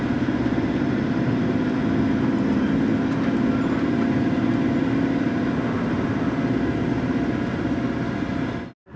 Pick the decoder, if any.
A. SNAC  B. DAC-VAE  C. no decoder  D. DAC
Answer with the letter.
C